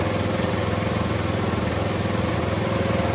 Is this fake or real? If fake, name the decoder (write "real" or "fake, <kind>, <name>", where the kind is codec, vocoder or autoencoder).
real